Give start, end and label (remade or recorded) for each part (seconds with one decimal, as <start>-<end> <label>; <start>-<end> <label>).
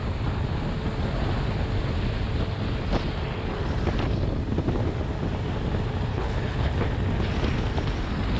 0.0-6.1 recorded; 6.1-6.7 remade; 6.7-8.4 recorded